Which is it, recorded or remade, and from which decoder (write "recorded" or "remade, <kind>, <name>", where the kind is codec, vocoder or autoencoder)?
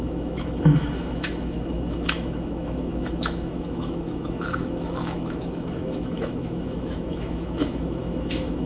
remade, autoencoder, DAC-VAE